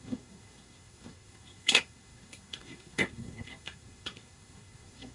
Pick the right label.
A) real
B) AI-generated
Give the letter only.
B